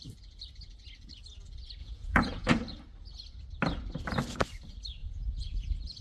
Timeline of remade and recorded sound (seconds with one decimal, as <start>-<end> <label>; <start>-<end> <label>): 0.0-1.8 recorded; 1.8-2.5 remade; 2.5-5.0 recorded; 5.0-6.0 remade